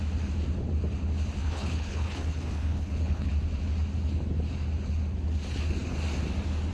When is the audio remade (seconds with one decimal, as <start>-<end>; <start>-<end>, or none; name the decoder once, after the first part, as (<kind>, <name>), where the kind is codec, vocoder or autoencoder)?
1.4-3.3 (codec, HILCodec)